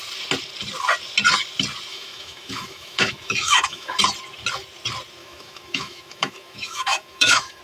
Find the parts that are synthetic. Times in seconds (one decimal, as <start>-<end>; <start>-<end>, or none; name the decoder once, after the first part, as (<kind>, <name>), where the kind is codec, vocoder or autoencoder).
1.9-4.0 (autoencoder, DAC-VAE); 5.2-7.6